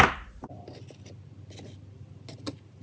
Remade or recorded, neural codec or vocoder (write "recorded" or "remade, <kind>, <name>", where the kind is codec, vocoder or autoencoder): recorded